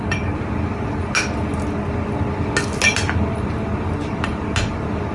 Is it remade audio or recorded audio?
recorded